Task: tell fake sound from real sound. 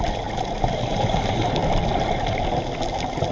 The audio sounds real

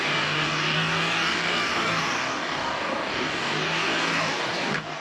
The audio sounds fake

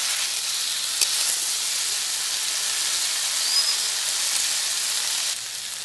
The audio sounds real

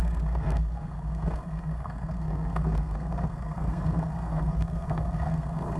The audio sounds fake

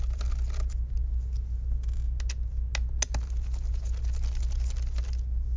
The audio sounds real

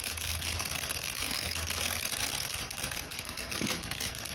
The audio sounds fake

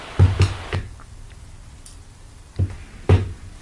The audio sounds real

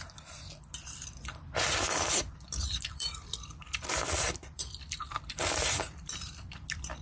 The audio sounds fake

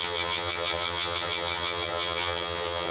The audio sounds fake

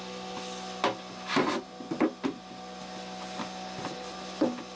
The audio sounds real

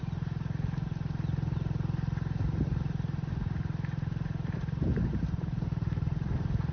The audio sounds fake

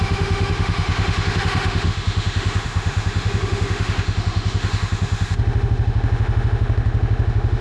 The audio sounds fake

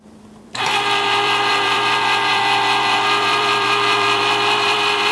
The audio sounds fake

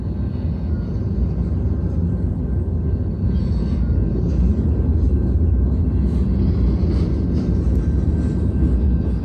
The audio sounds real